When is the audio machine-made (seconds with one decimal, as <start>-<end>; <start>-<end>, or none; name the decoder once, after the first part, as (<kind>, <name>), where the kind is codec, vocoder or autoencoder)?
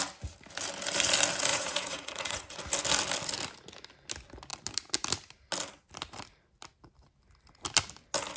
1.5-2.6 (vocoder, Vocos)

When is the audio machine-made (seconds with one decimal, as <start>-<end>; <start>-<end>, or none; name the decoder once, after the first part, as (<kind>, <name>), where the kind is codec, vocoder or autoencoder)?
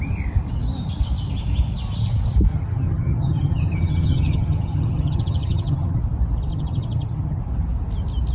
2.5-6.0 (vocoder, HiFi-GAN); 6.5-7.4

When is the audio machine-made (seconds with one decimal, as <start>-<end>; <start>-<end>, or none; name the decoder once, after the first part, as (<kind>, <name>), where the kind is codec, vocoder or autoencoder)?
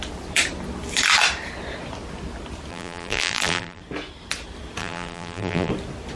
2.7-3.8 (vocoder, BigVGAN v2); 4.8-5.7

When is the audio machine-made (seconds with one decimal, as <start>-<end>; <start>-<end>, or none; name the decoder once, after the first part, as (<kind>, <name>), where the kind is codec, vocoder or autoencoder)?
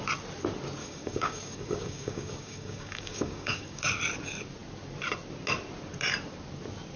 0.8-3.8 (codec, DAC)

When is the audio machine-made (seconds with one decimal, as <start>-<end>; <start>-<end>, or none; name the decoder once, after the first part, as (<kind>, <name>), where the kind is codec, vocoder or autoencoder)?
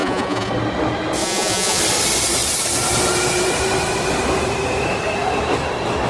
0.0-0.5 (vocoder, Vocos); 1.2-1.8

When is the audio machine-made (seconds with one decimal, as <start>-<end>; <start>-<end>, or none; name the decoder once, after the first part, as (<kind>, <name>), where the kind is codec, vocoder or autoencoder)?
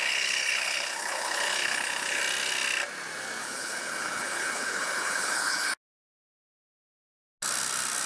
0.0-2.2 (codec, HILCodec); 3.4-5.7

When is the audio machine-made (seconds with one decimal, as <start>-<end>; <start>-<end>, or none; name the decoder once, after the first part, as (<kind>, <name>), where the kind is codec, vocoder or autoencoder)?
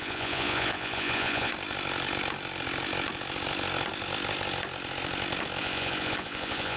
0.0-1.5 (vocoder, Vocos); 5.6-6.8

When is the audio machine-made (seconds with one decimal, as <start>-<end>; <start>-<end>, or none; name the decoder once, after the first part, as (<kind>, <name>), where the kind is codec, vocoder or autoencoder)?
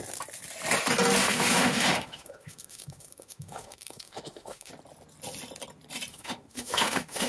1.2-4.7 (autoencoder, DAC-VAE); 6.1-7.3